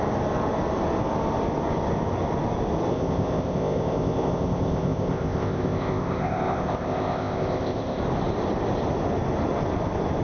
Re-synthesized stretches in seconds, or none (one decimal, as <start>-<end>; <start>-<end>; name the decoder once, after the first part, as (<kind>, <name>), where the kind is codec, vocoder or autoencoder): 2.9-8.0 (codec, ZipCodec)